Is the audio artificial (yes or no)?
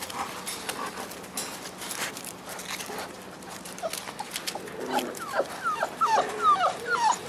no